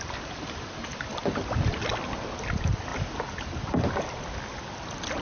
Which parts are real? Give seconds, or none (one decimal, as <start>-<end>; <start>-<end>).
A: 0.0-5.2